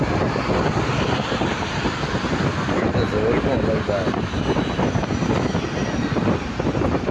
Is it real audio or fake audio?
real